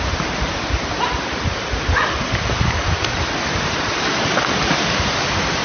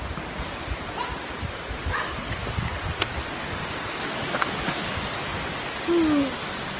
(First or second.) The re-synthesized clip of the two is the first